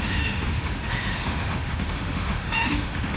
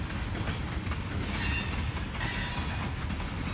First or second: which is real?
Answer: second